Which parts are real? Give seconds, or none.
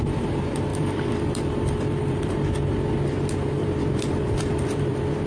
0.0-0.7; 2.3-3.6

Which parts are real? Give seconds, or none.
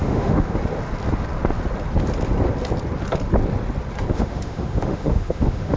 0.6-4.1